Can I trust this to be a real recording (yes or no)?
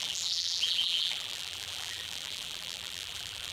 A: no